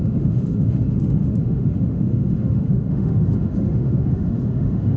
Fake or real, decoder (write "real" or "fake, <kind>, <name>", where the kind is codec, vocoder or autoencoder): fake, autoencoder, DAC-VAE